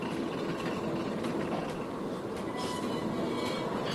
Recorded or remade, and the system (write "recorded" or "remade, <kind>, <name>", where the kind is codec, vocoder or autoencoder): recorded